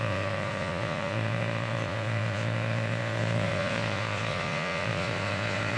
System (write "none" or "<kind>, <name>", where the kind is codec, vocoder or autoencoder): vocoder, Vocos